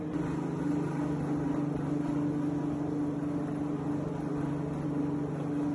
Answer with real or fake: real